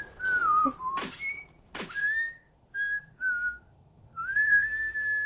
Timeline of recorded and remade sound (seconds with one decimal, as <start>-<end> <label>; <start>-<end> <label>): 0.0-2.0 recorded; 2.0-5.3 remade